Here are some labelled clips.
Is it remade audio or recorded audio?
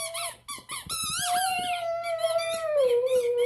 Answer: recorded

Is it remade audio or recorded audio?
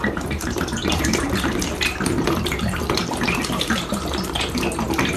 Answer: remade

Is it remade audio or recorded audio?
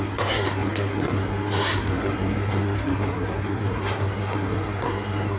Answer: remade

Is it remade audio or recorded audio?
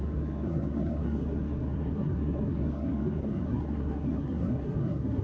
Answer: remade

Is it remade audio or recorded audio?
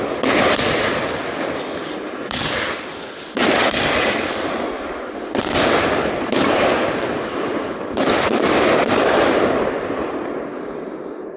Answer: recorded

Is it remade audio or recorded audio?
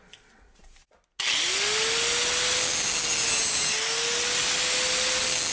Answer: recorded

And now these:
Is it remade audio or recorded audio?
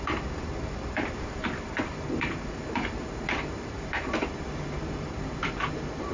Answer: remade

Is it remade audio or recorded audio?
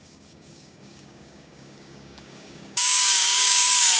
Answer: remade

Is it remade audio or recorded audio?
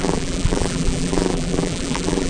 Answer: remade